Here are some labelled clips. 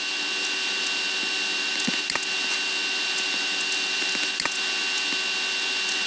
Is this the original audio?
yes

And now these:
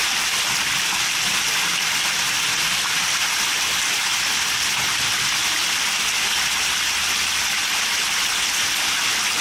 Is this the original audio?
yes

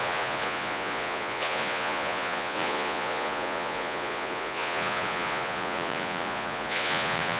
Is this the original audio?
no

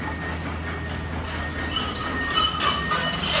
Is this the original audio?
yes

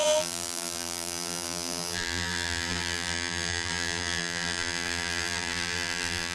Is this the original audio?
no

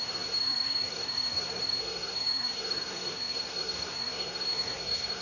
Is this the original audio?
no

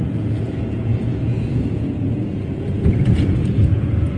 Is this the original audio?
no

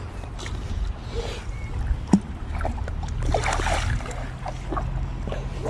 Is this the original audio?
yes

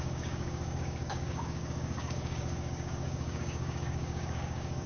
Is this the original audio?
no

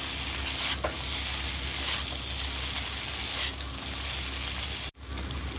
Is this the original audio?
yes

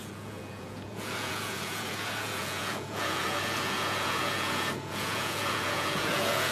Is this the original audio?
no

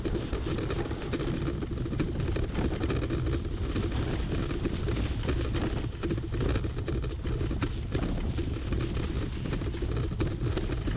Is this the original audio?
yes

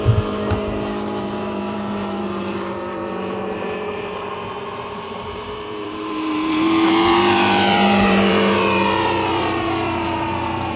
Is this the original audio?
no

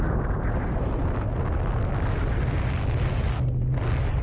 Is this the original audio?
yes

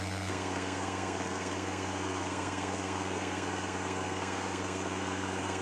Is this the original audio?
no